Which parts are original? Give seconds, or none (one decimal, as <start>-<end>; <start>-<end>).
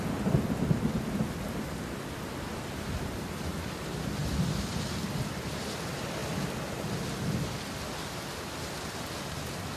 0.0-9.8